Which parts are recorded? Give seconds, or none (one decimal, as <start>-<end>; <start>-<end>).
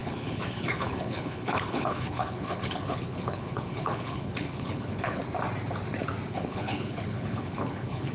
5.2-6.3